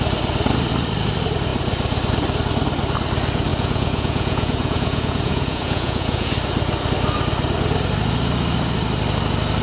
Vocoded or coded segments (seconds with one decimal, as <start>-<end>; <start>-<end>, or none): 3.5-6.3